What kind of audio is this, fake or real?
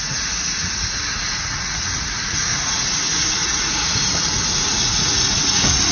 fake